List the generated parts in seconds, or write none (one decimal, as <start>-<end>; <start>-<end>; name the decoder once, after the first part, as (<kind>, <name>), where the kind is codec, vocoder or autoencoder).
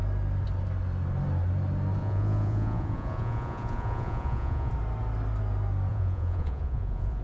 2.0-4.7 (vocoder, Vocos); 5.9-7.2